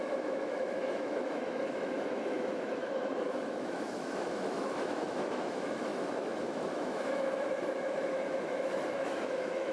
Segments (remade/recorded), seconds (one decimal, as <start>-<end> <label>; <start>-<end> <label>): 0.0-9.7 remade